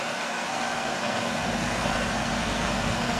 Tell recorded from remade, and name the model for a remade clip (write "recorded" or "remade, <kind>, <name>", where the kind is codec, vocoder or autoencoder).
remade, codec, SNAC